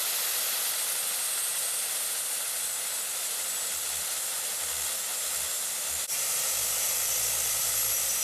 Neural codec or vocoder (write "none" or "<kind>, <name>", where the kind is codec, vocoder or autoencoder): none